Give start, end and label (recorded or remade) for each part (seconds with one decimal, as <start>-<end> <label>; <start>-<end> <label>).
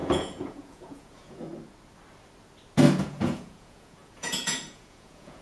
0.0-1.5 remade; 1.5-3.0 recorded; 3.0-5.4 remade